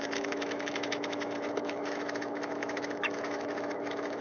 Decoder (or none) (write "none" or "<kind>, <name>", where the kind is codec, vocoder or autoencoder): autoencoder, DAC-VAE